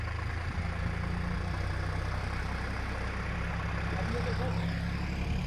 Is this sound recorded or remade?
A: recorded